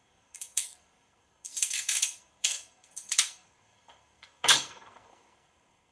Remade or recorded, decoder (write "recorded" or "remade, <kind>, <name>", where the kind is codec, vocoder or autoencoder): remade, codec, SNAC